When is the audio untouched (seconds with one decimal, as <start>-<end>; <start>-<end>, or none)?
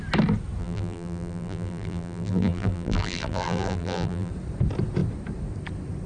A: 0.0-0.6; 4.3-6.1